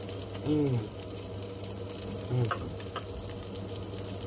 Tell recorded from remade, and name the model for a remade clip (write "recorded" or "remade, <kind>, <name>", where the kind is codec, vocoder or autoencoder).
recorded